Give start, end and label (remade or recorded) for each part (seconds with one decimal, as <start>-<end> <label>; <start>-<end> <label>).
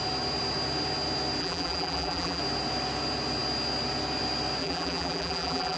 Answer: 0.0-1.4 recorded; 1.4-2.4 remade; 2.4-4.6 recorded; 4.6-5.8 remade